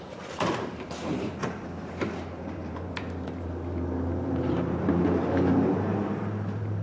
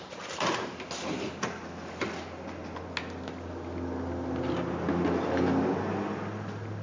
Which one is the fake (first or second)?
first